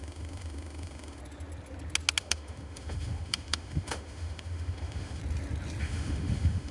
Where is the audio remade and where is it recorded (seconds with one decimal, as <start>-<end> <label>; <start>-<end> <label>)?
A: 0.0-1.2 remade; 1.2-2.2 recorded; 2.2-5.2 remade; 5.2-5.8 recorded; 5.8-6.7 remade